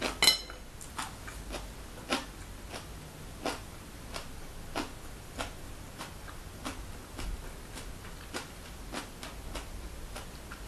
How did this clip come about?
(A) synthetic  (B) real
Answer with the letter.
B